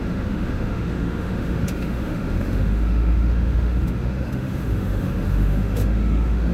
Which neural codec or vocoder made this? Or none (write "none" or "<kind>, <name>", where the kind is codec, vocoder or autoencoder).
autoencoder, DAC-VAE